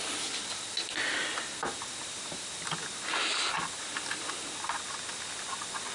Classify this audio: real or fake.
real